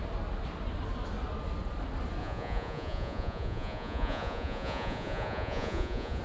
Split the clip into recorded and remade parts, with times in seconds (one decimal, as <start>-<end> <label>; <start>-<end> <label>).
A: 0.0-2.2 recorded; 2.2-6.2 remade